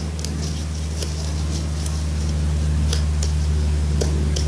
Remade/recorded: recorded